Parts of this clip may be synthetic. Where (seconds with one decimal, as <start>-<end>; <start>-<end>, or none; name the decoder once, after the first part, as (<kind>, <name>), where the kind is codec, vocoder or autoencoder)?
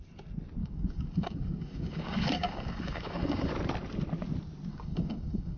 0.6-3.5 (codec, DAC); 4.7-5.6